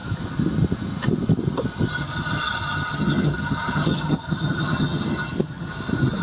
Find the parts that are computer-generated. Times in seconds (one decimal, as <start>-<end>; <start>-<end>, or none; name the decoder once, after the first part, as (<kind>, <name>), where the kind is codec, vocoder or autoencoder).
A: 2.0-5.7 (vocoder, HiFi-GAN)